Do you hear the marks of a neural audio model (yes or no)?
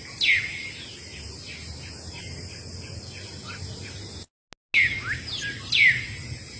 no